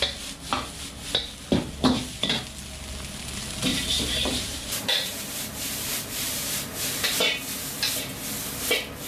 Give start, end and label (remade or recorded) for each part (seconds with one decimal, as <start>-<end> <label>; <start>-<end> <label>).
0.0-3.7 recorded; 3.7-7.2 remade; 7.2-9.1 recorded